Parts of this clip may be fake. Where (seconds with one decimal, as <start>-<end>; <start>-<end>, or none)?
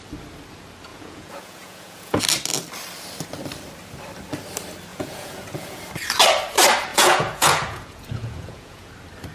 0.9-2.2; 4.9-5.8; 6.9-8.9